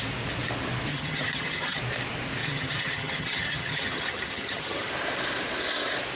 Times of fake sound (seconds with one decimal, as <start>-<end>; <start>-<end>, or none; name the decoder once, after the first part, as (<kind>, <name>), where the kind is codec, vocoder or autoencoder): 0.9-1.8 (vocoder, HiFi-GAN); 2.4-4.9